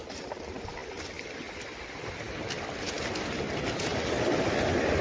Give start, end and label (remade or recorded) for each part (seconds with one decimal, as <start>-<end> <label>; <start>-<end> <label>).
0.0-5.0 recorded